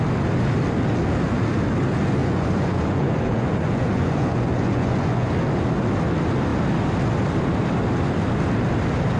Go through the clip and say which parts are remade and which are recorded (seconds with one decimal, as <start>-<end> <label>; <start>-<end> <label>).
0.0-2.2 recorded; 2.2-5.3 remade; 5.3-9.2 recorded